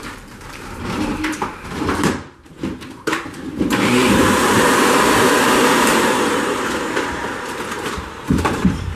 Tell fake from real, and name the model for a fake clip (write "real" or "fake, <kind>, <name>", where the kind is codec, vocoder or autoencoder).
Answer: fake, vocoder, BigVGAN v2